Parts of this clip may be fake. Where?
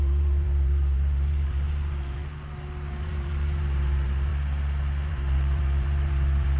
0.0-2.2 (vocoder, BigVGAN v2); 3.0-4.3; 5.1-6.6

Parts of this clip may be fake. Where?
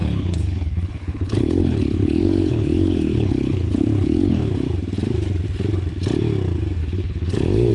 0.0-4.5 (codec, HILCodec); 6.8-7.7